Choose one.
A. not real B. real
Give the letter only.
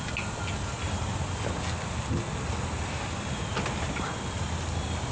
B